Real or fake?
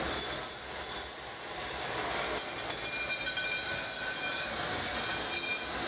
real